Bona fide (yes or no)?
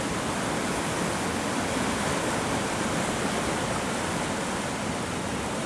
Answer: yes